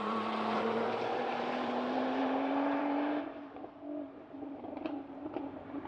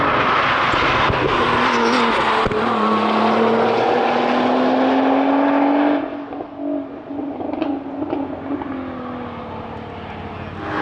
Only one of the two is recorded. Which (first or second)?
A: second